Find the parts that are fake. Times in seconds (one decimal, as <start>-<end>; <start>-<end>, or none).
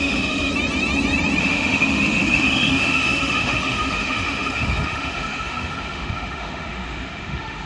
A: 0.0-0.5; 1.4-7.7